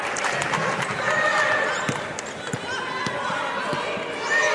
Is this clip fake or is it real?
real